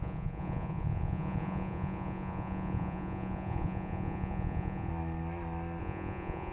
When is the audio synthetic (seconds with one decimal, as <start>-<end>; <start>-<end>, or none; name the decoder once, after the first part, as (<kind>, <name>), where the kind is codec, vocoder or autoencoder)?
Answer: 0.0-4.9 (vocoder, Vocos); 5.8-6.5